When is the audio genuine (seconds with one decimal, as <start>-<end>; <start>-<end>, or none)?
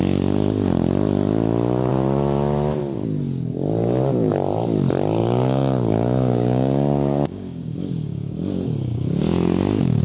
0.0-5.2